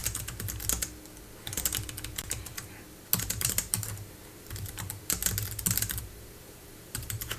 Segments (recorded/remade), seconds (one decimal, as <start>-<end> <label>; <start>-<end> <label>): 0.0-3.2 recorded; 3.2-5.2 remade; 5.2-6.0 recorded; 6.0-7.4 remade